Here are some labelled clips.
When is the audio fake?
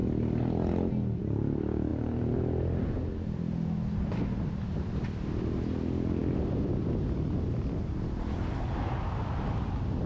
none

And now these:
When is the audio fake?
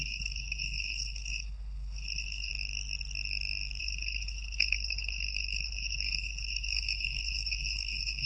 0.0-2.5 (codec, HILCodec); 3.8-8.3